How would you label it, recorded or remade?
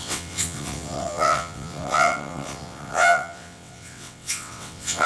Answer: remade